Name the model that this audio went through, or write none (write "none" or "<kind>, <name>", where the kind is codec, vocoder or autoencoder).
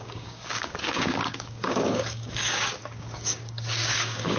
codec, DAC